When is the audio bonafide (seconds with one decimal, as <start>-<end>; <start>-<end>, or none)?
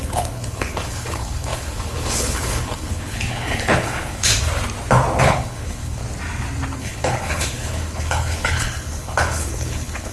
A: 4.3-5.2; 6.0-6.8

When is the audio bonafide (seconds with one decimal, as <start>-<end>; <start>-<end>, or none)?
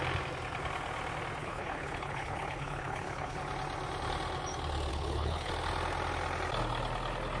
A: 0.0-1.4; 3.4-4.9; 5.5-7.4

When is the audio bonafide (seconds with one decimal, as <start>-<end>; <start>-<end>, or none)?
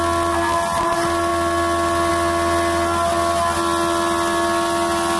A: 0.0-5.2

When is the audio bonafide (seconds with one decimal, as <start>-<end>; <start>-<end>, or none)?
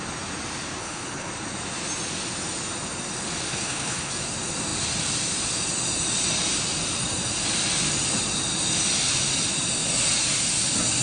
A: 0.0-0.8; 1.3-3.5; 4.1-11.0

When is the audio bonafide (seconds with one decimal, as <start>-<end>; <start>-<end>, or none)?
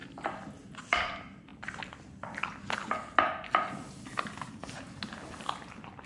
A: 0.0-6.1